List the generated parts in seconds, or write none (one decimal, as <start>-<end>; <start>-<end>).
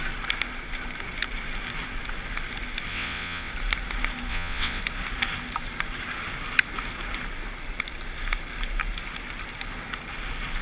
2.9-3.5; 4.3-4.8